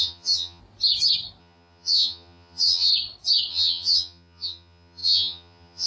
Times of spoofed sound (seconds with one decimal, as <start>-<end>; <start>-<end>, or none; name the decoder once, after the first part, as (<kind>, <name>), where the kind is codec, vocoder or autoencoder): 0.0-0.6 (vocoder, HiFi-GAN); 1.4-2.9; 3.5-5.9